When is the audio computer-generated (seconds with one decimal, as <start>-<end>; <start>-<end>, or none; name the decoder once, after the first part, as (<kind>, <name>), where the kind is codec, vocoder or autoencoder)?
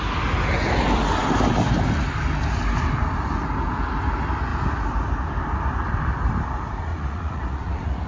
6.9-8.1 (vocoder, Vocos)